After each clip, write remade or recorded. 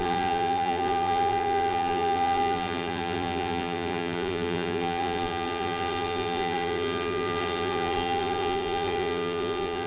remade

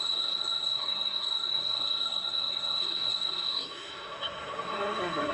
remade